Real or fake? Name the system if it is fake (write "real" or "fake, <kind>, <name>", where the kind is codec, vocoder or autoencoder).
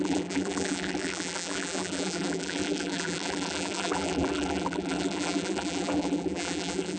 fake, vocoder, BigVGAN v2